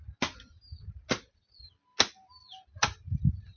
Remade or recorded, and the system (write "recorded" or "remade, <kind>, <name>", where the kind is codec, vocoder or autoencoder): recorded